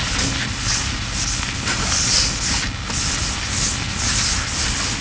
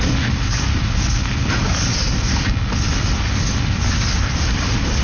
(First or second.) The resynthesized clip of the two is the second